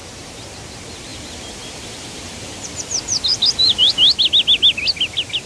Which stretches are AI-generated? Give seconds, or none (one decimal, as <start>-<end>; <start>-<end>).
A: 1.1-2.8; 3.3-3.9